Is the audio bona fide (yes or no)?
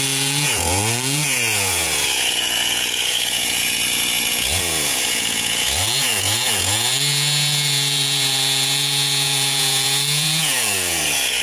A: no